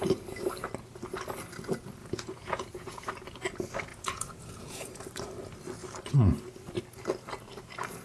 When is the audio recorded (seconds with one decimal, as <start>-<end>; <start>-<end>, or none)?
0.0-2.0; 3.1-3.9; 5.0-8.0